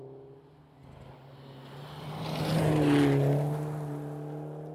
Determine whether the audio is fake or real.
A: real